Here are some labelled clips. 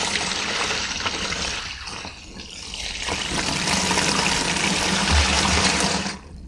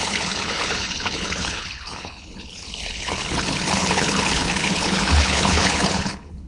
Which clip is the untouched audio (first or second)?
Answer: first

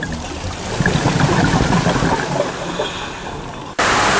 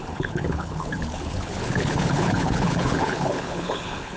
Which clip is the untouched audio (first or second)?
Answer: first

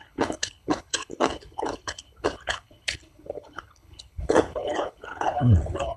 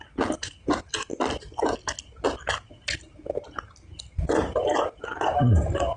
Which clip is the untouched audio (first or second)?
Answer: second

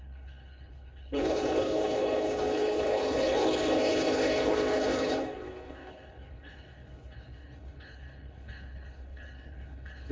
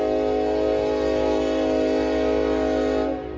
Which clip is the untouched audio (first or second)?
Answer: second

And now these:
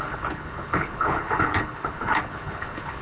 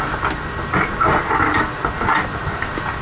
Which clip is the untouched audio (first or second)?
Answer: second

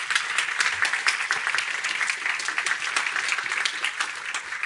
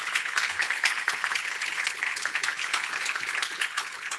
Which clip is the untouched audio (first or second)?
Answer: first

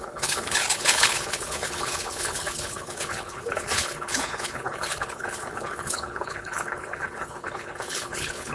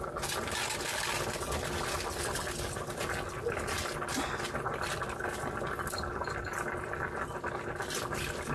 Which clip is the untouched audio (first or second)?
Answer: second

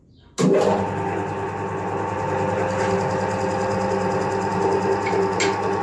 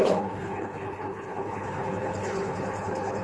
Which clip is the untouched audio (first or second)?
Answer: first